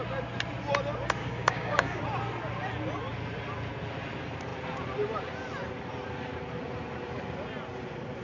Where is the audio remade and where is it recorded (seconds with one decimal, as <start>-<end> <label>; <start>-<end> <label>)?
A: 0.0-1.2 recorded; 1.2-2.0 remade; 2.0-8.2 recorded